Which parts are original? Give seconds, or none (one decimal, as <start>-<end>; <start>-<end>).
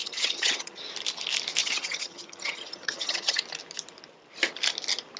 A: 0.8-1.6; 3.4-5.2